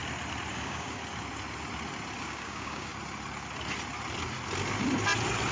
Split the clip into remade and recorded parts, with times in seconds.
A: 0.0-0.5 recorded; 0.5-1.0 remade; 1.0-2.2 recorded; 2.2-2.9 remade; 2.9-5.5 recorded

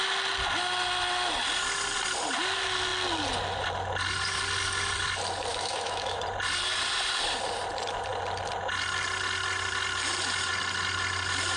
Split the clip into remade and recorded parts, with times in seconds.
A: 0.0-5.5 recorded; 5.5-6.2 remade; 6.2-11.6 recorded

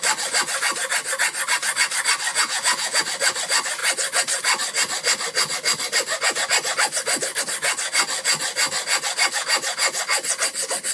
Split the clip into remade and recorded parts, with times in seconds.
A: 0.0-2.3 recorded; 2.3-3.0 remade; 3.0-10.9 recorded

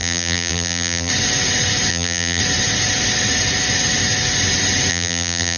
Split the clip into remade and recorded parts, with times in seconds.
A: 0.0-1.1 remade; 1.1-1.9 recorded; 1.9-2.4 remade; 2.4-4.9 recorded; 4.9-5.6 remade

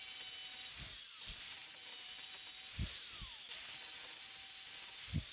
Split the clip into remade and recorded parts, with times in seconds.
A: 0.0-5.3 recorded